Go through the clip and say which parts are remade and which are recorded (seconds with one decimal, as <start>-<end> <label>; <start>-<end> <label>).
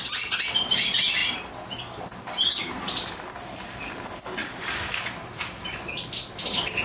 0.0-4.4 recorded; 4.4-5.7 remade; 5.7-6.8 recorded